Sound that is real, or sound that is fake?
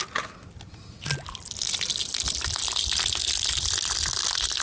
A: real